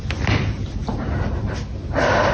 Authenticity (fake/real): real